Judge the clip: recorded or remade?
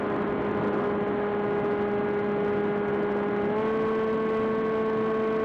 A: recorded